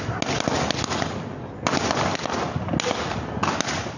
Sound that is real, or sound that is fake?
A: real